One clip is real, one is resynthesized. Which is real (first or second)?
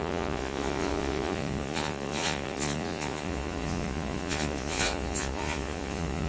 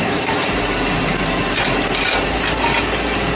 second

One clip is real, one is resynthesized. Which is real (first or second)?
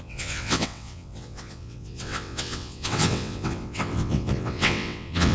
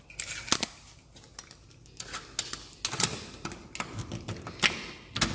second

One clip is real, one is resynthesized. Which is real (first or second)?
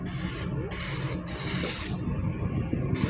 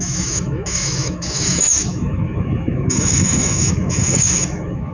first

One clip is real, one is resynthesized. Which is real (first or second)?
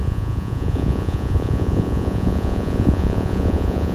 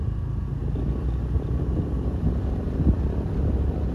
second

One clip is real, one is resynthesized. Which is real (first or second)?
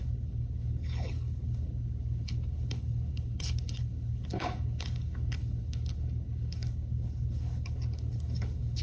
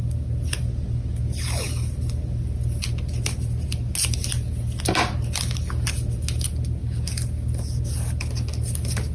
second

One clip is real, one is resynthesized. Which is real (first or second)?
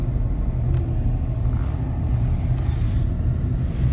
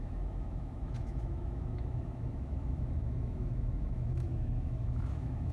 first